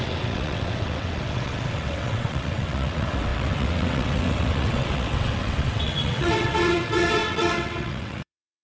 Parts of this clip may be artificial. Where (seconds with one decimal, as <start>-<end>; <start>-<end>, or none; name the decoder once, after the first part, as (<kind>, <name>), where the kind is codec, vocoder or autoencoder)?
0.0-8.6 (vocoder, WaveNeXt)